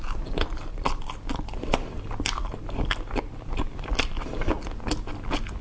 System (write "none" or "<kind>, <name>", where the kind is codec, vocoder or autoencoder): none